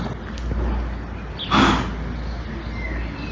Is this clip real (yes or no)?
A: yes